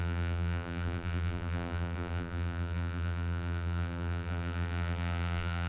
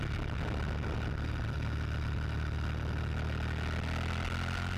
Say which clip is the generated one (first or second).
first